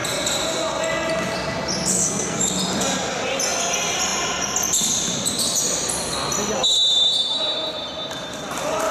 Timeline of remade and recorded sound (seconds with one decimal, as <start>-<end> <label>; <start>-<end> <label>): 0.0-1.9 recorded; 1.9-2.4 remade; 2.4-8.9 recorded